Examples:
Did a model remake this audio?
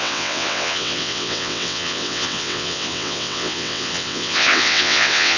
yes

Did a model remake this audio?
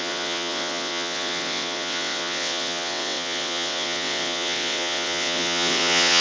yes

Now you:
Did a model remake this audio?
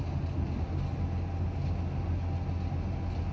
no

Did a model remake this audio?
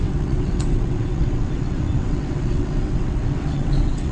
yes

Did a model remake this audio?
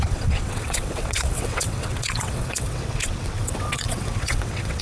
yes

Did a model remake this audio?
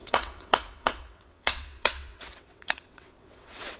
yes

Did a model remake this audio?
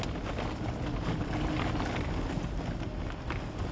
no